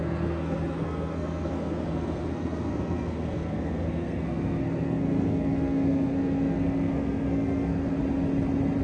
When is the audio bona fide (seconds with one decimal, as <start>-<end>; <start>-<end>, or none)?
8.0-8.8